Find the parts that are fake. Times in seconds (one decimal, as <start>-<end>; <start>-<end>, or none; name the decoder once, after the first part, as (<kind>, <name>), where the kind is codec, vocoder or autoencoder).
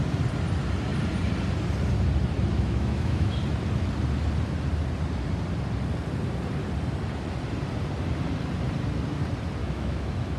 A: 2.5-3.4 (autoencoder, DAC-VAE); 9.6-10.4